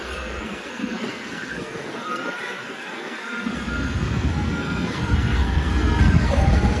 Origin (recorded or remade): remade